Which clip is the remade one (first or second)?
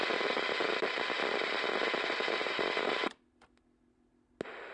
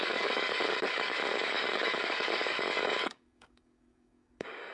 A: second